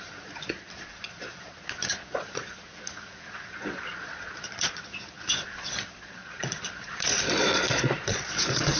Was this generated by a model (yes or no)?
yes